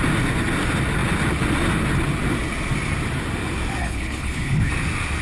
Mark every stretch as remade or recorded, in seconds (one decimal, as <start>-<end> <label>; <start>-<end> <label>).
0.0-3.8 recorded; 3.8-4.7 remade; 4.7-5.2 recorded